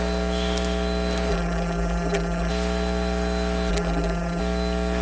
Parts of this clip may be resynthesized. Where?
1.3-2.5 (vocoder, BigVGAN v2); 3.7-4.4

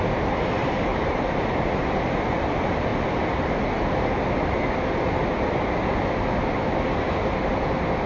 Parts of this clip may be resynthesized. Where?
0.9-1.9 (vocoder, BigVGAN v2)

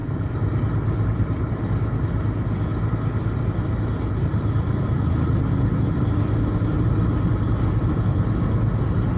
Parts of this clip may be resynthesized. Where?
0.0-1.6 (vocoder, BigVGAN v2)

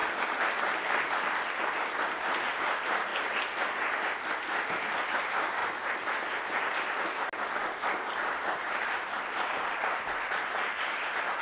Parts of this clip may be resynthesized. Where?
2.3-3.1 (vocoder, BigVGAN v2); 5.1-5.6; 8.2-11.4